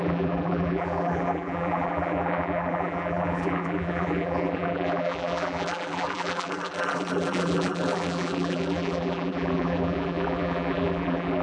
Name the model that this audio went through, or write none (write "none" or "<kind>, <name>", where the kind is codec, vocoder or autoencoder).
vocoder, BigVGAN v2